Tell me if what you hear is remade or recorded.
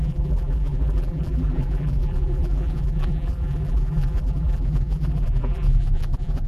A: remade